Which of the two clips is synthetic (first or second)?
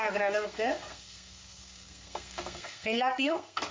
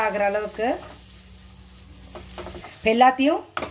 first